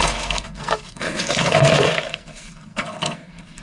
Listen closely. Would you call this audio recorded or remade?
remade